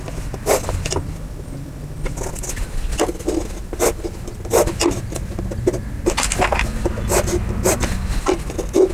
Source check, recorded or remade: recorded